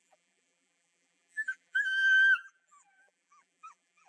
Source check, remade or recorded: remade